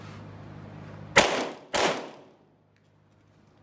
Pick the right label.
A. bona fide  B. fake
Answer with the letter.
A